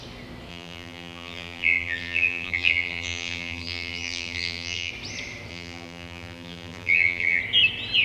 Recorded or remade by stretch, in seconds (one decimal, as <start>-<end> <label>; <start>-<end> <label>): 0.0-0.5 recorded; 0.5-4.9 remade; 4.9-5.5 recorded; 5.5-7.4 remade; 7.4-8.0 recorded